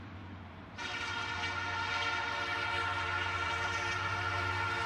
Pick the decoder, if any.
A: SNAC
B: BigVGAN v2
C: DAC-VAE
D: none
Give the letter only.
B